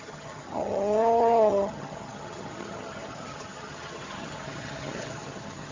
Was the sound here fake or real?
fake